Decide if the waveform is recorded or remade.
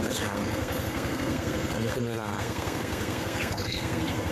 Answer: remade